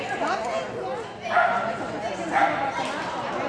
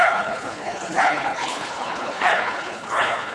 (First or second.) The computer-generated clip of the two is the second